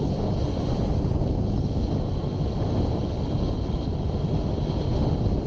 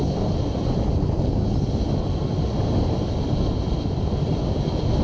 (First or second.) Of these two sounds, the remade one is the second